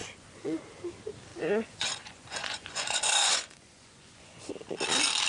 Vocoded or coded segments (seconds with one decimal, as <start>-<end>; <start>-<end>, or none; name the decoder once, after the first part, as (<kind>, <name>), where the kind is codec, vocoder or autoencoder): 0.0-0.6 (vocoder, Vocos); 1.3-4.5

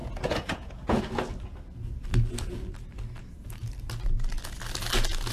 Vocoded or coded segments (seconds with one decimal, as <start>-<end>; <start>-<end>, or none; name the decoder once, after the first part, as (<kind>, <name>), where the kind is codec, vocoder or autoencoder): 0.0-1.0 (vocoder, Vocos)

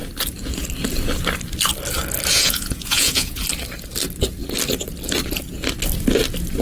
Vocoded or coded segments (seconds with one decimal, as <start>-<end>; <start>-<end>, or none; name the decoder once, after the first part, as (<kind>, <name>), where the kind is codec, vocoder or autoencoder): 2.3-3.4 (vocoder, Vocos)

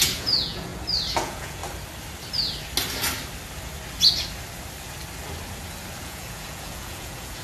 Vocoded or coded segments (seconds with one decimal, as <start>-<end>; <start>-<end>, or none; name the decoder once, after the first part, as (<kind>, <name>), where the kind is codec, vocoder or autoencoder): 0.0-0.7 (vocoder, Vocos); 1.2-1.6; 6.0-7.4

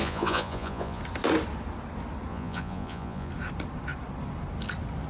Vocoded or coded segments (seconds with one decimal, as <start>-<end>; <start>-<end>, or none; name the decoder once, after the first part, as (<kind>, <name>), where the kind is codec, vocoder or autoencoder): 0.0-1.0 (vocoder, Vocos); 2.3-3.3

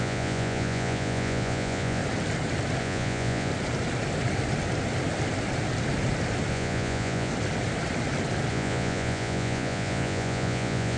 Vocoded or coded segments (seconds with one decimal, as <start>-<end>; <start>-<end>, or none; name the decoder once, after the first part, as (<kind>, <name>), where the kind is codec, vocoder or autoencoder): 0.0-2.0 (vocoder, Vocos); 2.8-3.5; 6.5-7.3; 8.5-11.0